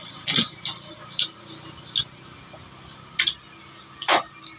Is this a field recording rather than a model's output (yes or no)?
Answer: yes